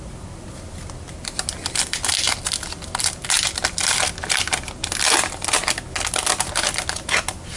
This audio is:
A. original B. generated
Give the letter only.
A